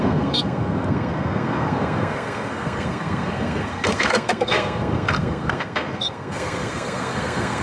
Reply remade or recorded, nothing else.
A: remade